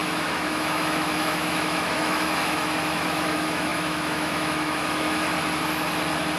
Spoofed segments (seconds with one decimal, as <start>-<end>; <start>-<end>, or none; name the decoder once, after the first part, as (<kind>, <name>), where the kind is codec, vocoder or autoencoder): 0.0-5.3 (autoencoder, DAC-VAE)